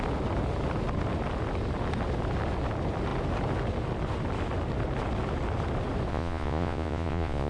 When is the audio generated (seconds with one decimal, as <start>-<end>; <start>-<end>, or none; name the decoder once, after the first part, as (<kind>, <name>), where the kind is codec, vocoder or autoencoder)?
6.1-7.5 (vocoder, Vocos)